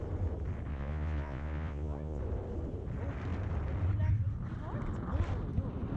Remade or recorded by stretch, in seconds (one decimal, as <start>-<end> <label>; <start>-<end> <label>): 0.0-0.7 recorded; 0.7-2.2 remade; 2.2-6.0 recorded